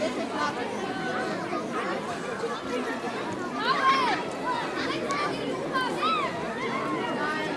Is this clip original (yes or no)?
yes